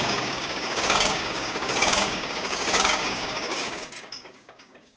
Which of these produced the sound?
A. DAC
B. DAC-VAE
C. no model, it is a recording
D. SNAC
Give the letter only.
A